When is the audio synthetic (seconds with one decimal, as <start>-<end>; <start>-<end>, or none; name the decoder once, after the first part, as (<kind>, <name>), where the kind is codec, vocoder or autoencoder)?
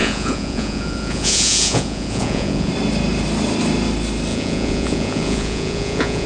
0.0-2.7 (vocoder, Vocos); 4.3-6.3